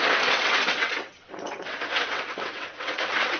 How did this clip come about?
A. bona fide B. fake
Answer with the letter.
B